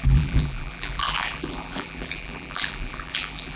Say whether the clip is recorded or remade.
remade